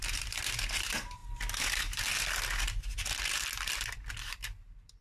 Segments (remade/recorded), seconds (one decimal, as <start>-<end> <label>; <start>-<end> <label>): 0.0-1.2 remade; 1.2-4.2 recorded; 4.2-5.0 remade